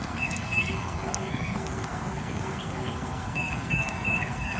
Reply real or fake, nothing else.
fake